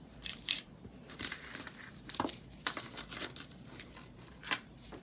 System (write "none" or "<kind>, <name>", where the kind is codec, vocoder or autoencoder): vocoder, BigVGAN v2